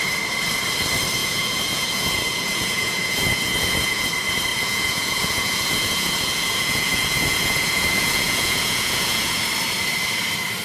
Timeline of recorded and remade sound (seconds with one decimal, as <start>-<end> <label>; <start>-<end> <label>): 0.0-1.2 recorded; 1.2-4.1 remade; 4.1-4.5 recorded; 4.5-9.4 remade; 9.4-10.6 recorded